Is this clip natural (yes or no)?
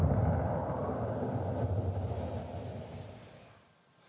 yes